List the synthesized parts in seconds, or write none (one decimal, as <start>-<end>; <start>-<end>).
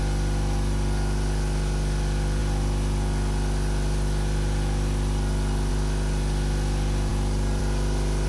none